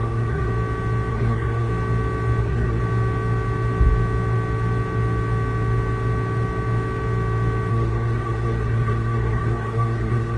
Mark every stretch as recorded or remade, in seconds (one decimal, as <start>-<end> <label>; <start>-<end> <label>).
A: 0.0-0.5 remade; 0.5-1.1 recorded; 1.1-1.7 remade; 1.7-2.4 recorded; 2.4-2.8 remade; 2.8-7.7 recorded; 7.7-10.4 remade